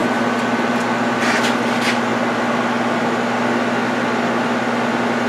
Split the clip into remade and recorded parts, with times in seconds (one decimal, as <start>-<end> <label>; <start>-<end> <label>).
0.0-1.0 remade; 1.0-5.3 recorded